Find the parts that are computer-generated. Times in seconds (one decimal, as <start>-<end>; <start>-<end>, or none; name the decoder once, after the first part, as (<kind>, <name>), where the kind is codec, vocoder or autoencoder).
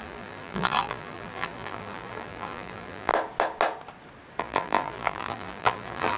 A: 0.0-3.1 (vocoder, BigVGAN v2); 4.4-6.2